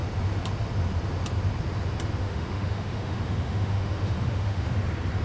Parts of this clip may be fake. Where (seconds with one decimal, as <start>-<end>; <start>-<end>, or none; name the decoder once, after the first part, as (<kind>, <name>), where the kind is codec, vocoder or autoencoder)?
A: 2.2-4.7 (autoencoder, DAC-VAE)